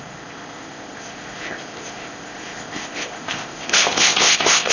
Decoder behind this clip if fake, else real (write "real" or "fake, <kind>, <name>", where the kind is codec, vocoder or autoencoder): fake, codec, ZipCodec